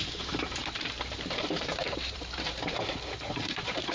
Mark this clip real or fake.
fake